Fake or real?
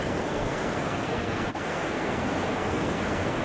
fake